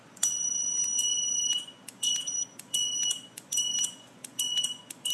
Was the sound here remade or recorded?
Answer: remade